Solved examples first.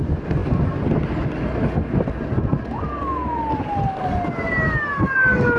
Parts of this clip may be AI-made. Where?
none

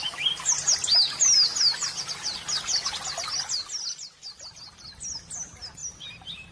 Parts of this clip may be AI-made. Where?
none

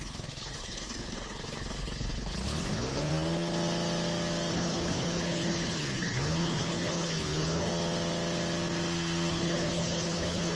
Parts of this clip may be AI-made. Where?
0.0-3.1 (codec, HILCodec); 4.5-7.7; 9.3-10.6

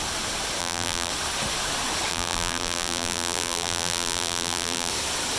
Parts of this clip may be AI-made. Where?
0.6-1.1 (vocoder, BigVGAN v2); 2.1-4.9

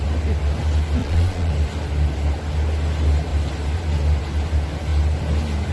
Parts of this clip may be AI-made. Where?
1.0-1.5 (vocoder, Vocos)